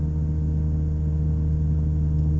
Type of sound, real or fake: real